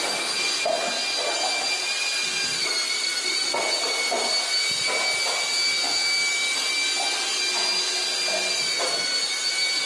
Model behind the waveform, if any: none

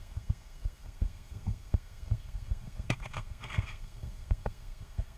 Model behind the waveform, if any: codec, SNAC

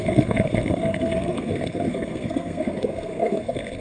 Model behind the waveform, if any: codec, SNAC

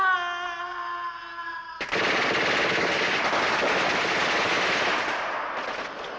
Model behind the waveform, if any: none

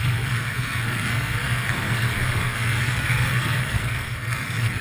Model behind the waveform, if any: codec, SNAC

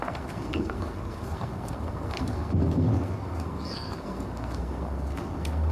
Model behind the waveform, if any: codec, SNAC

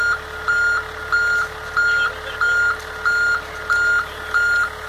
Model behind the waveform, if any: none